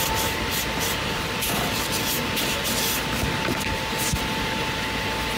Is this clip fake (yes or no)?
no